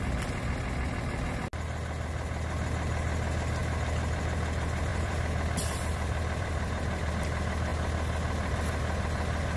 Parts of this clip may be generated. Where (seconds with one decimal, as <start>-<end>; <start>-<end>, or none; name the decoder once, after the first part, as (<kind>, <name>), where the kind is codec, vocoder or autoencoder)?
4.9-7.1 (vocoder, BigVGAN v2)